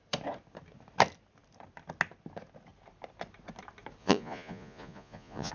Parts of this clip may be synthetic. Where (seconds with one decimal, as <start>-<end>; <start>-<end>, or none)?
4.0-5.5